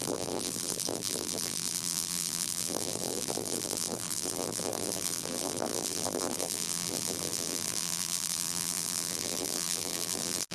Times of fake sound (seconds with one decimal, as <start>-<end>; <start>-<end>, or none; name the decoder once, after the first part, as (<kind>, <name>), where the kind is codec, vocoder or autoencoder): 0.0-10.5 (vocoder, BigVGAN v2)